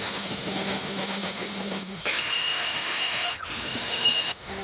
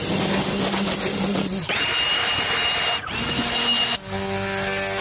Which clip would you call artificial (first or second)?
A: first